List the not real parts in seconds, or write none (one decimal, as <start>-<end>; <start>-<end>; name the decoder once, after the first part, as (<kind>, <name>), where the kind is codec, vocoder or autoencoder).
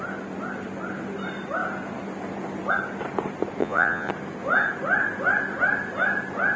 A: 3.6-4.1 (vocoder, Vocos)